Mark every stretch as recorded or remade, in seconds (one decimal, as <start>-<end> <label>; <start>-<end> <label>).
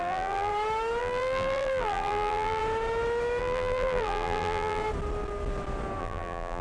0.0-0.5 remade; 0.5-1.0 recorded; 1.0-2.6 remade; 2.6-3.4 recorded; 3.4-4.8 remade; 4.8-6.0 recorded; 6.0-6.6 remade